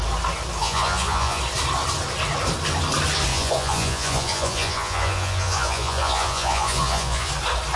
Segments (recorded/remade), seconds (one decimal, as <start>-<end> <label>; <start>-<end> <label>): 0.0-0.6 recorded; 0.6-1.4 remade; 1.4-3.3 recorded; 3.3-7.3 remade; 7.3-7.8 recorded

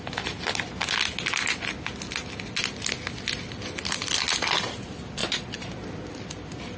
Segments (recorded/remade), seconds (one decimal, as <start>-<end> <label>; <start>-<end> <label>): 0.0-5.2 recorded; 5.2-5.7 remade; 5.7-6.8 recorded

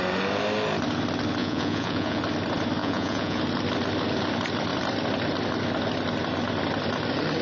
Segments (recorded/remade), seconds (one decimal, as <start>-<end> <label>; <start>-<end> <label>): 0.0-1.4 recorded; 1.4-2.2 remade; 2.2-2.8 recorded; 2.8-3.4 remade; 3.4-7.4 recorded

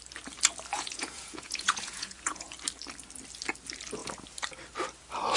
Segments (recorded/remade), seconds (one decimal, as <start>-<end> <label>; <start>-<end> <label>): 0.0-0.7 recorded; 0.7-2.5 remade; 2.5-5.4 recorded

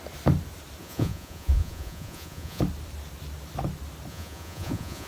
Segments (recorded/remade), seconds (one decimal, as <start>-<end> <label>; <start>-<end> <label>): 0.0-0.8 recorded; 0.8-2.6 remade; 2.6-4.1 recorded; 4.1-5.1 remade

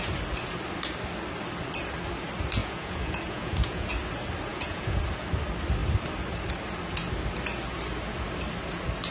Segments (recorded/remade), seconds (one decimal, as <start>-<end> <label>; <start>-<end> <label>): 0.0-2.6 recorded; 2.6-3.9 remade; 3.9-4.5 recorded; 4.5-5.0 remade; 5.0-9.1 recorded

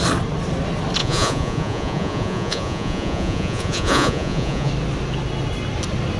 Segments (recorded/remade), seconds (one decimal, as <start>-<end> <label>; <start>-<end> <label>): 0.0-1.0 recorded; 1.0-4.7 remade; 4.7-6.2 recorded